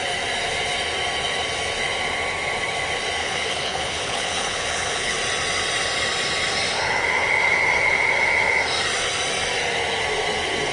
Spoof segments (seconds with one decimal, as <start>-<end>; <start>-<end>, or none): 3.2-5.1